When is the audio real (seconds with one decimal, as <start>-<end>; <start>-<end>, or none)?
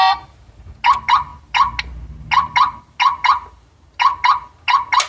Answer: 0.0-5.1